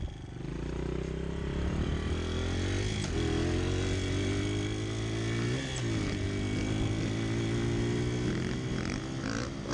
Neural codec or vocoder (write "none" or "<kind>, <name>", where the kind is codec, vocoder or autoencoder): none